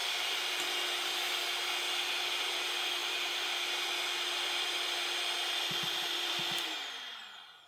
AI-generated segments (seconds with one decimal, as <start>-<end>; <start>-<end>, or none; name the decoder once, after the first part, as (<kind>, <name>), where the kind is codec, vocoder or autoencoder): none

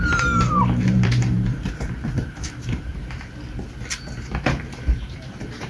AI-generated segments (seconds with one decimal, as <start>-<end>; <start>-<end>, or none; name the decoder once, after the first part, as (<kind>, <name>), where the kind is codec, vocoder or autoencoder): 0.0-2.9 (vocoder, BigVGAN v2); 4.6-5.7